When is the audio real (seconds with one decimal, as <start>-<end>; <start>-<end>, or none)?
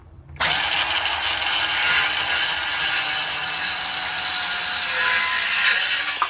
0.0-6.3